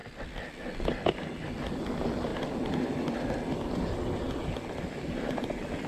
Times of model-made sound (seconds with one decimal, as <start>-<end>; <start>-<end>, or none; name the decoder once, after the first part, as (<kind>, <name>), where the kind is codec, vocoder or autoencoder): none